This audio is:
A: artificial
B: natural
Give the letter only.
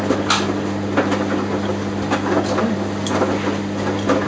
B